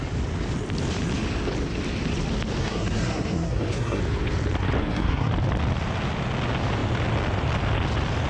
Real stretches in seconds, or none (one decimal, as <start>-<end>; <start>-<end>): 0.0-2.6; 4.0-4.8; 5.3-8.3